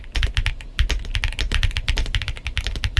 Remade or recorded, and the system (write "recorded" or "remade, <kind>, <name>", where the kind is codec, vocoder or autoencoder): recorded